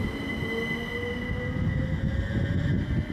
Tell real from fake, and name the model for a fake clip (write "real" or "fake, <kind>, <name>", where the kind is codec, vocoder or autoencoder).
real